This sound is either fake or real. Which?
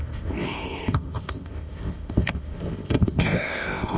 fake